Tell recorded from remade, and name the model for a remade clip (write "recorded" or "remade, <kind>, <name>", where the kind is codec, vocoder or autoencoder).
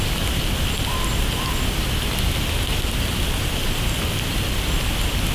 recorded